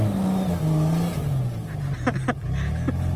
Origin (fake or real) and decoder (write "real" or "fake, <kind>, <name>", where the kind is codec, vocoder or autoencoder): real